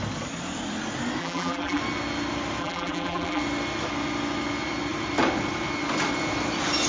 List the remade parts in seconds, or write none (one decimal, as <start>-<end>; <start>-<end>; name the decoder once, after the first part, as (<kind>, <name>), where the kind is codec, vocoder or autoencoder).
1.2-1.8 (vocoder, BigVGAN v2); 2.6-3.4

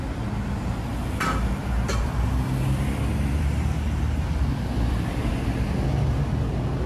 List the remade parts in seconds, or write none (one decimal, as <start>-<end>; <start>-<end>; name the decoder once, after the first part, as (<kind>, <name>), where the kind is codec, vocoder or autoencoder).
1.6-5.3 (vocoder, BigVGAN v2)

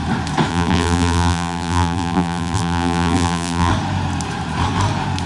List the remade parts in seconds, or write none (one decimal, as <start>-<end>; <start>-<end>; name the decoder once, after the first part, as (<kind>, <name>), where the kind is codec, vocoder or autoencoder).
0.5-3.7 (vocoder, BigVGAN v2)

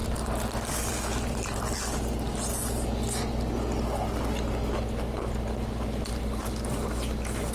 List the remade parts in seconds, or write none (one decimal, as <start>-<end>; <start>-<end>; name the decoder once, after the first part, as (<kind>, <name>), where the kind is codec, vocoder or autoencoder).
0.0-1.8 (vocoder, BigVGAN v2)

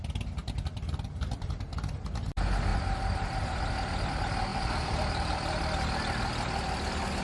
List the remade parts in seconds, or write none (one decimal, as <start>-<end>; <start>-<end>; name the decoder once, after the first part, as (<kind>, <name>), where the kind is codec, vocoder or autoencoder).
0.4-1.9 (vocoder, BigVGAN v2); 2.7-3.6; 4.5-5.0

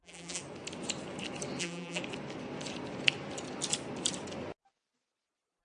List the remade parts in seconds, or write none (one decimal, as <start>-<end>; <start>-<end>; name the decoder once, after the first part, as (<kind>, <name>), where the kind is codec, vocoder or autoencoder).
0.0-0.4 (vocoder, BigVGAN v2); 1.6-2.0

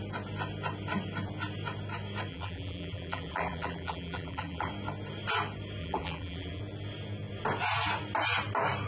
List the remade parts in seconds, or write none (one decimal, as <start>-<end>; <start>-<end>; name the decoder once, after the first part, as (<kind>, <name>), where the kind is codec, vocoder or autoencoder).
2.3-4.7 (vocoder, BigVGAN v2); 5.8-6.6

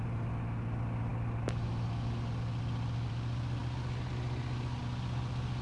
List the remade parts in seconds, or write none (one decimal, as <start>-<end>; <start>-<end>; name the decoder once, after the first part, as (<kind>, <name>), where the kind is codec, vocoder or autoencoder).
none